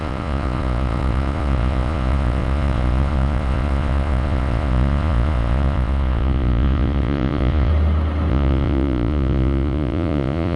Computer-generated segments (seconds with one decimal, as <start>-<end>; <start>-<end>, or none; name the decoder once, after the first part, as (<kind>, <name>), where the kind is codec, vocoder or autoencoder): 0.0-7.7 (vocoder, Vocos); 8.3-10.6